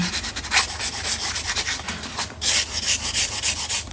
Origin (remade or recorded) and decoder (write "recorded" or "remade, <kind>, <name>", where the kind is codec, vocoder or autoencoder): recorded